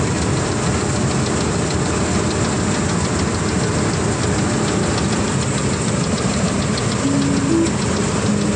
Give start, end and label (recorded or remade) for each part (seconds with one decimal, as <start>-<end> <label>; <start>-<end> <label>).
0.0-5.6 recorded; 5.6-6.6 remade; 6.6-8.6 recorded